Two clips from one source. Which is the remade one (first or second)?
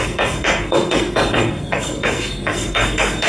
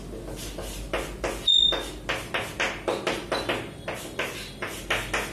first